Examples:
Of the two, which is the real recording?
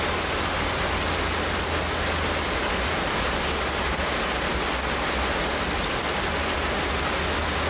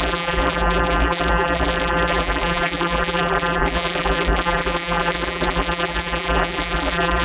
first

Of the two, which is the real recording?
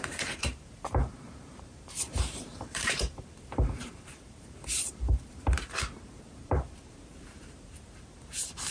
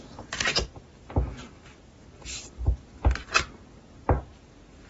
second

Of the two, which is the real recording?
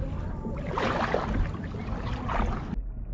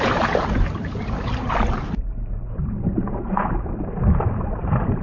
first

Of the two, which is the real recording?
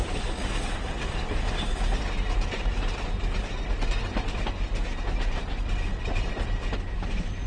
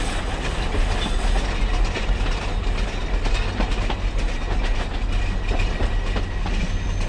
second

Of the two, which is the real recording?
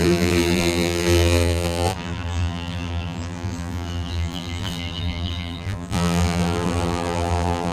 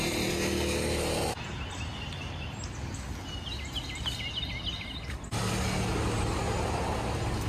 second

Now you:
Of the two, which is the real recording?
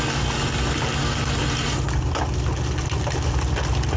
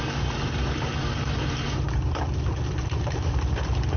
first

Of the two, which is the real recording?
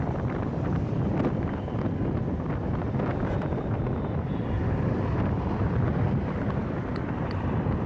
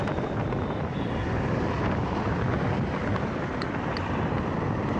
second